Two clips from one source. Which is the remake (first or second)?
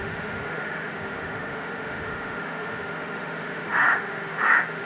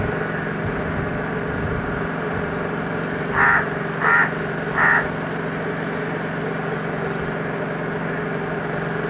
first